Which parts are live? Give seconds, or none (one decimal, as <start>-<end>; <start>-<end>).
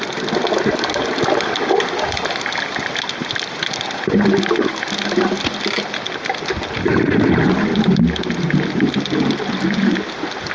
0.0-10.5